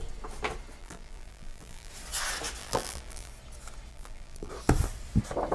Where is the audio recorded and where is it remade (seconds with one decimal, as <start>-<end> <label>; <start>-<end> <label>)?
0.0-0.8 recorded; 0.8-1.9 remade; 1.9-2.6 recorded; 2.6-3.3 remade; 3.3-3.9 recorded; 3.9-4.5 remade; 4.5-5.5 recorded

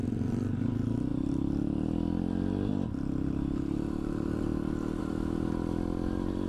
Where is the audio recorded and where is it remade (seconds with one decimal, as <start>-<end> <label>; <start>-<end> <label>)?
0.0-6.5 recorded

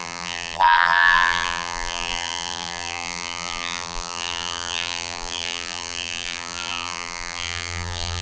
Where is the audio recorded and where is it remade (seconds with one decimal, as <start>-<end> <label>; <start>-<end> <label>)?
0.0-8.2 remade